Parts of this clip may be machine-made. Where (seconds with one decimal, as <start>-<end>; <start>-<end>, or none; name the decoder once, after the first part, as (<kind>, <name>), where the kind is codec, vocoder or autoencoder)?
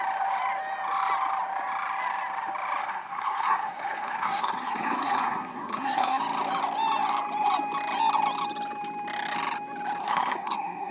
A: 2.8-6.2 (codec, SNAC); 10.0-10.9